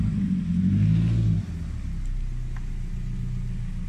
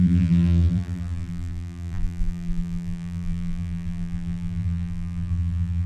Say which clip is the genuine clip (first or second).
first